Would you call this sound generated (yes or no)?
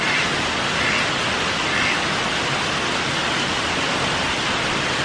no